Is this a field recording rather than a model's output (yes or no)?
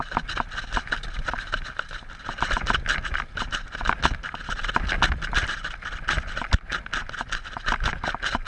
yes